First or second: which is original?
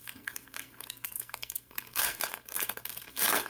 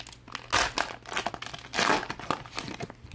second